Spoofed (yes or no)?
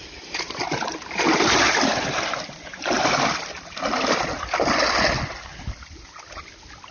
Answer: no